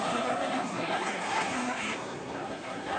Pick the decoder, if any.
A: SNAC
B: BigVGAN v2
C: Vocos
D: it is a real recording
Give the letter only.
A